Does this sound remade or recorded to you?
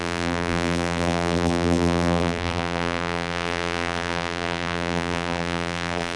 remade